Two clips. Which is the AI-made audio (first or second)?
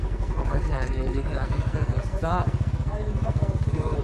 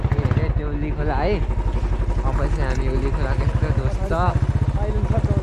first